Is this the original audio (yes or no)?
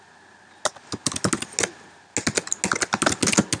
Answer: yes